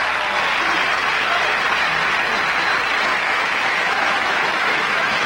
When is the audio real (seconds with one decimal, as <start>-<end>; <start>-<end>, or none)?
0.0-3.1